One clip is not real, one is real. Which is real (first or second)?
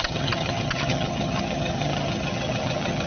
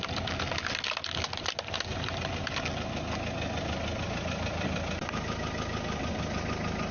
second